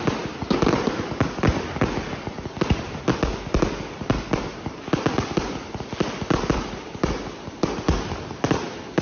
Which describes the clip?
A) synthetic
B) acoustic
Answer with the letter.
B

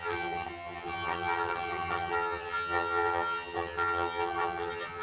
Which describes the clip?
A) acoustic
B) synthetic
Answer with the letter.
B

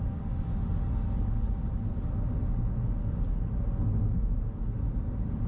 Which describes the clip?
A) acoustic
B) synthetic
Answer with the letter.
A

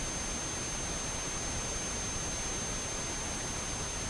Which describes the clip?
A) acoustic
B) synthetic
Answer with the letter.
A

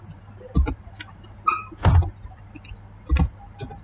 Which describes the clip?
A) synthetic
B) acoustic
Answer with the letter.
B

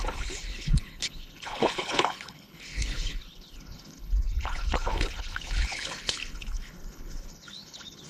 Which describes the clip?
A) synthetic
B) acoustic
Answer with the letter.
A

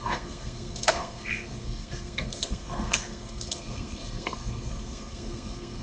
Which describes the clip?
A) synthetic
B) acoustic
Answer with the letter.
A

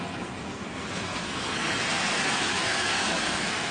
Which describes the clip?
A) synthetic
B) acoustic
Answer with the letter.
A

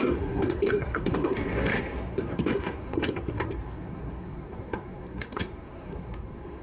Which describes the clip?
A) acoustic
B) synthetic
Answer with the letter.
B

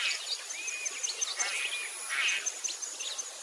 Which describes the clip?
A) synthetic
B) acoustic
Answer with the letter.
B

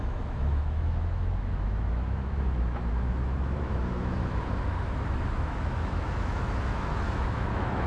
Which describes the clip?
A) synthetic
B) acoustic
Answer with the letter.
A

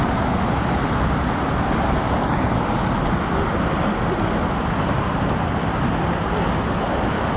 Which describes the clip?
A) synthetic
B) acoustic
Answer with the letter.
B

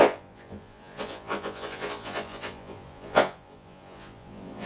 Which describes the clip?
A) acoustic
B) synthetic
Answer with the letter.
B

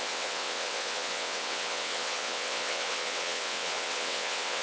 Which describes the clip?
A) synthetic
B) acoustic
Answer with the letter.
A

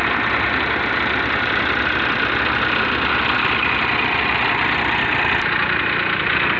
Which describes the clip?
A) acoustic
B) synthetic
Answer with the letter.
A